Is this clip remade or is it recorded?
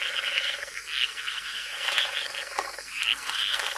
remade